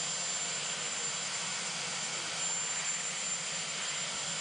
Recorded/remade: recorded